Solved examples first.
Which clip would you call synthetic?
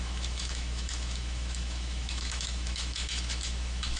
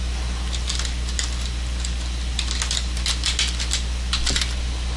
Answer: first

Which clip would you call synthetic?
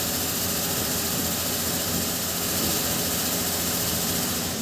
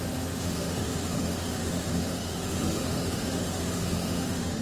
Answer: second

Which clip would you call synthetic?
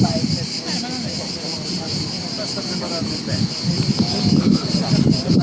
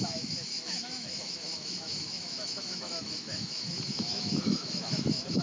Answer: second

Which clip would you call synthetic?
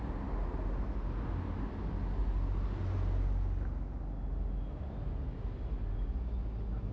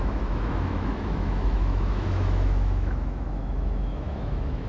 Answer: second